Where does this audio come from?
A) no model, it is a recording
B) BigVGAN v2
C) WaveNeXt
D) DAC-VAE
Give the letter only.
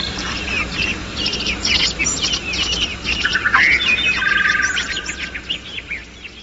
B